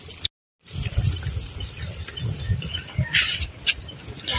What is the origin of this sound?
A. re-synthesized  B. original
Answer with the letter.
B